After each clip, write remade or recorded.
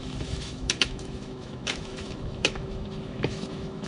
remade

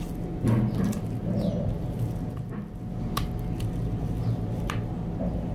recorded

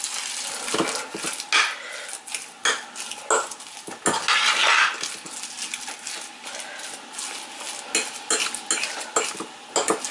recorded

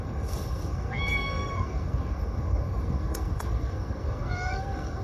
remade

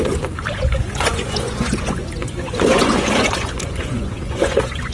remade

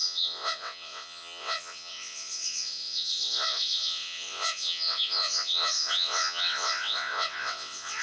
remade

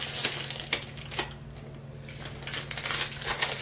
recorded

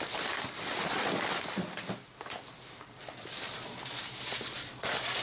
remade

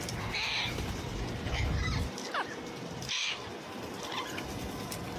remade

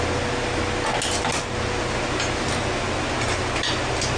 recorded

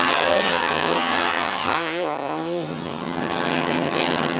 remade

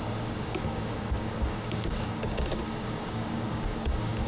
remade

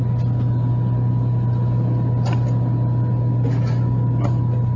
recorded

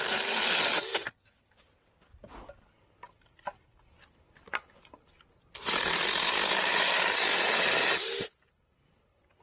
recorded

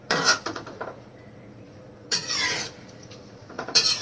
remade